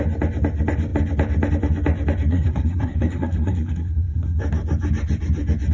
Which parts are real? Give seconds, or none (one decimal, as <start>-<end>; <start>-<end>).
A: 0.0-2.3; 4.4-5.7